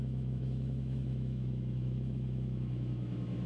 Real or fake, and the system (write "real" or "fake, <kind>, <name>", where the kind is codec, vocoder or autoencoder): fake, autoencoder, DAC-VAE